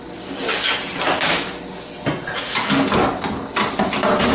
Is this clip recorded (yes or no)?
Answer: yes